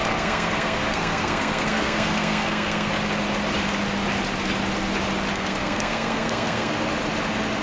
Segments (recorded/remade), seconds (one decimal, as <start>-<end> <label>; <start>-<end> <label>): 0.0-2.9 remade; 2.9-5.3 recorded; 5.3-6.7 remade; 6.7-7.6 recorded